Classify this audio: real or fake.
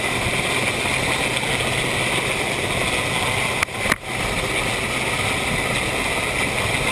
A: real